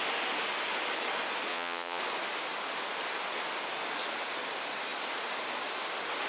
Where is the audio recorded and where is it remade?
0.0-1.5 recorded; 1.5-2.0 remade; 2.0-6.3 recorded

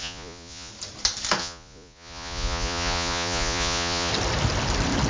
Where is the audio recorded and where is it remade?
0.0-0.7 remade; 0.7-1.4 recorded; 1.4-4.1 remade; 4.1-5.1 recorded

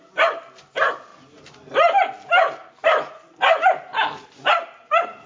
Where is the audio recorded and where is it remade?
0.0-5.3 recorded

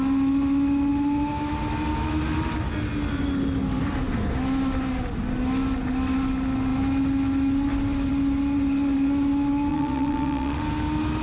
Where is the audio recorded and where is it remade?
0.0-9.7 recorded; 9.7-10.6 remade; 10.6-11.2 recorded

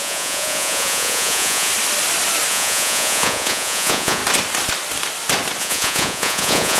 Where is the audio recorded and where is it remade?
0.0-1.7 remade; 1.7-2.5 recorded; 2.5-4.2 remade; 4.2-5.6 recorded; 5.6-6.8 remade

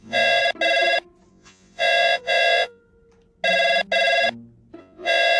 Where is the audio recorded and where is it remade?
0.0-0.4 remade; 0.4-1.3 recorded; 1.3-2.8 remade; 2.8-4.8 recorded; 4.8-5.4 remade

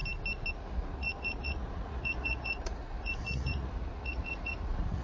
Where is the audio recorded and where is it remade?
0.0-0.5 recorded; 0.5-5.0 remade